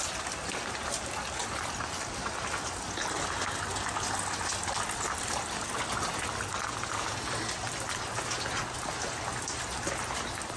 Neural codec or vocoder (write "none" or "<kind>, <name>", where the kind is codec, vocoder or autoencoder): none